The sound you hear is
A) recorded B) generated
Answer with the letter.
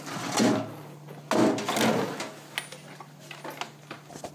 A